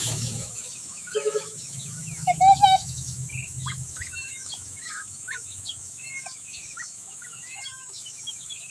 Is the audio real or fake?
fake